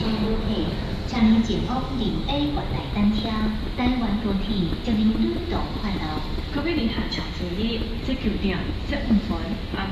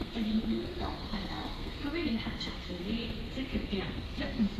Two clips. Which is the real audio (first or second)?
first